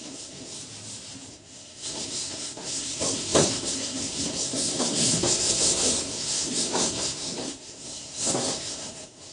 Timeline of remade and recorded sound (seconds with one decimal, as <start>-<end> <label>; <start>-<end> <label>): 0.0-0.6 remade; 0.6-1.3 recorded; 1.3-9.3 remade